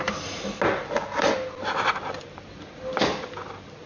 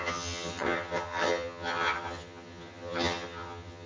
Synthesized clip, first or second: second